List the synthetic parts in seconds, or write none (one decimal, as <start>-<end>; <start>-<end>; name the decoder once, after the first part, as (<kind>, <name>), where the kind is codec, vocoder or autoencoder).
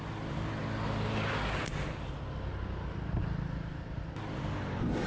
none